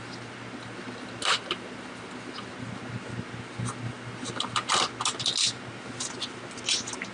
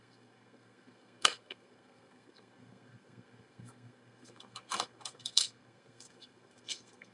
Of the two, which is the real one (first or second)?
first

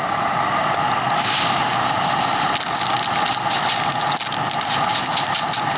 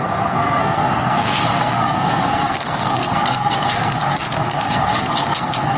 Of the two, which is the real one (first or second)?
first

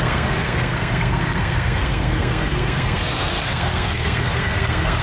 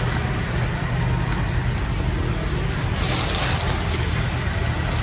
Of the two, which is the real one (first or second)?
second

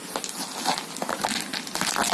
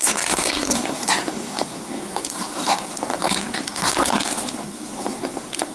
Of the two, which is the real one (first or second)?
first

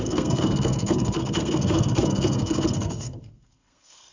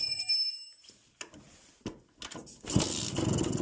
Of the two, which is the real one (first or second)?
second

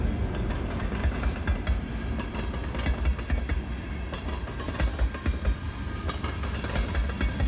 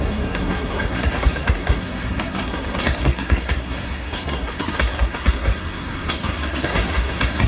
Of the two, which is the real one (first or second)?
first